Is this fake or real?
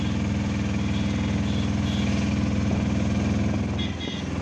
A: real